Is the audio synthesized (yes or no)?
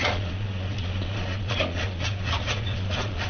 yes